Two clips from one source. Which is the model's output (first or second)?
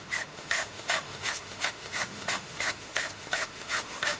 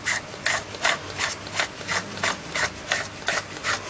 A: first